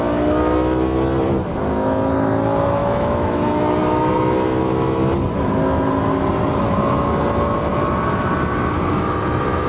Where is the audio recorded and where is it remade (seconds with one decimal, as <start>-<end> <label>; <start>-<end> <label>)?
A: 0.0-2.8 recorded; 2.8-3.4 remade; 3.4-9.7 recorded